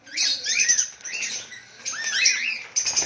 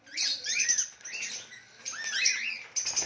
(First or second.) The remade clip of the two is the first